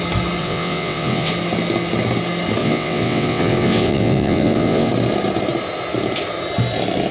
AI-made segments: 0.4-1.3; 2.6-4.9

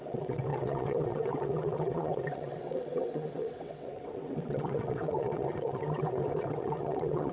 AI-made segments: 0.0-7.3